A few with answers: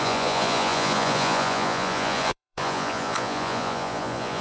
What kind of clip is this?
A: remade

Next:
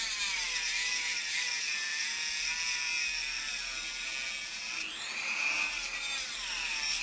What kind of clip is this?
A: remade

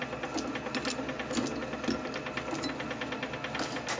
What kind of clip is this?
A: recorded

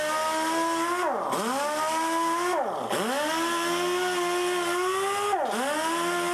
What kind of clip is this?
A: recorded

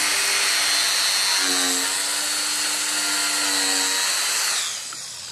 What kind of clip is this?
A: recorded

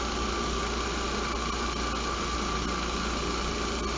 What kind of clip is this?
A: recorded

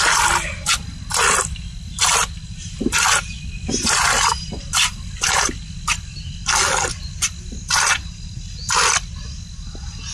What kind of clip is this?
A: recorded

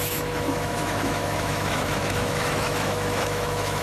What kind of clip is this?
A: remade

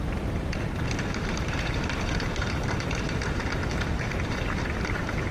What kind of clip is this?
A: remade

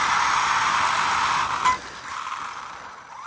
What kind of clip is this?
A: recorded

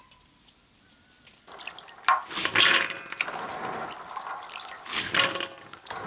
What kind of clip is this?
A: recorded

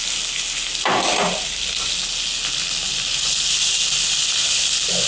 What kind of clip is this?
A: recorded